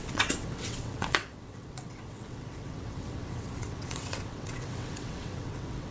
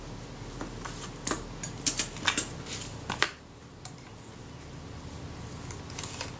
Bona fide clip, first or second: second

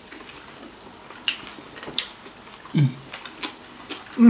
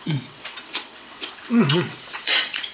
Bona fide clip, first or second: first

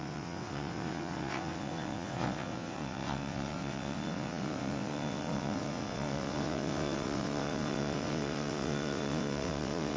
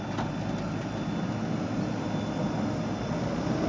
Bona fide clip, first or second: second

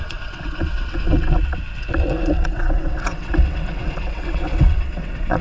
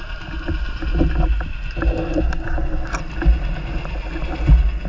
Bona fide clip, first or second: second